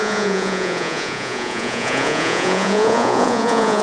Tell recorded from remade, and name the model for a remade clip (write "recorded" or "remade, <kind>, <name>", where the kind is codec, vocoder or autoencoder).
remade, vocoder, Vocos